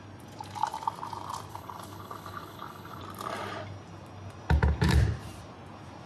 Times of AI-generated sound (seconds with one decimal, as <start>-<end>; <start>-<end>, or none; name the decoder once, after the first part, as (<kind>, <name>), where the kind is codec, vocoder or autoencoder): 1.5-3.0 (codec, HILCodec)